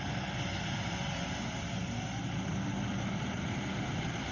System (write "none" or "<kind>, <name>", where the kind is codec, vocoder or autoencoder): none